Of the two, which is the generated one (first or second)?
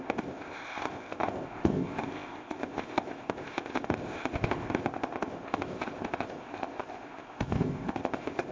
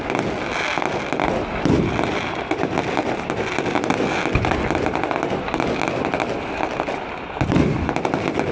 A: first